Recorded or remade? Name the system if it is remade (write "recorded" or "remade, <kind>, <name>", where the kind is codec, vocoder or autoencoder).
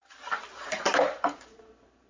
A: remade, vocoder, BigVGAN v2